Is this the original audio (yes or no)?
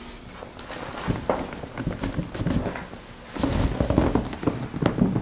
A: yes